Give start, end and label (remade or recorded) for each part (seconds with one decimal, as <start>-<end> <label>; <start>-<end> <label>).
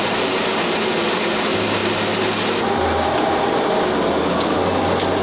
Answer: 0.0-5.2 recorded